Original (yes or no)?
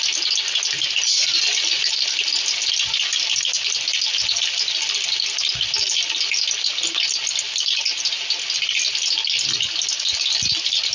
yes